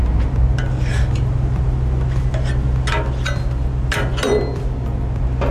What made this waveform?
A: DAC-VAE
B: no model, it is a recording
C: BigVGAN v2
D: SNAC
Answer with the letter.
B